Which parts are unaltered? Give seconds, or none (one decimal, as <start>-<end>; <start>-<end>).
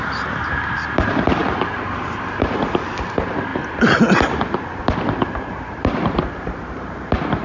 3.5-4.8